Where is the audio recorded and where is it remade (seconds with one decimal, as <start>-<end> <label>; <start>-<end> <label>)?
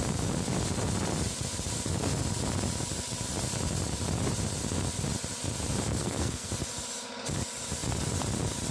0.0-5.9 recorded; 5.9-6.5 remade; 6.5-8.7 recorded